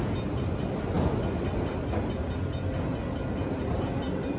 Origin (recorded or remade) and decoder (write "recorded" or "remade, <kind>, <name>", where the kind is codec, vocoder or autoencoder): recorded